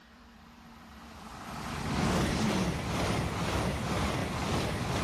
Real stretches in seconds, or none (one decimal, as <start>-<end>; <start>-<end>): 0.0-4.2